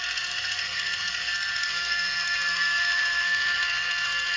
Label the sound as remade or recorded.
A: remade